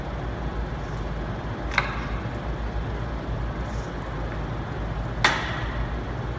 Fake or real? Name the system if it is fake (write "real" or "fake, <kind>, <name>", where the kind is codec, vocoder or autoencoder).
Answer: real